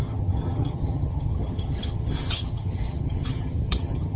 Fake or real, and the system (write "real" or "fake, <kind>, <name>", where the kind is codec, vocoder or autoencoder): fake, vocoder, HiFi-GAN